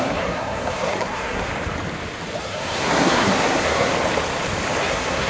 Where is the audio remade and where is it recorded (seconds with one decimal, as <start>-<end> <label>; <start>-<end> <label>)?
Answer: 0.0-1.5 remade; 1.5-2.4 recorded; 2.4-3.9 remade; 3.9-4.8 recorded; 4.8-5.3 remade